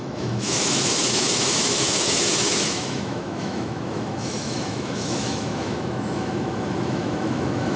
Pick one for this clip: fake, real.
fake